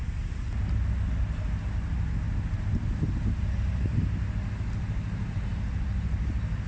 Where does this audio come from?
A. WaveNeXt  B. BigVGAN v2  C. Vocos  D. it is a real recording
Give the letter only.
D